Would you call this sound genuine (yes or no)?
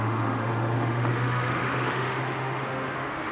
no